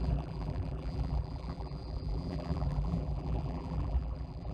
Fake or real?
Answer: fake